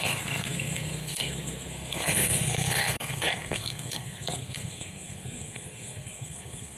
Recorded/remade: remade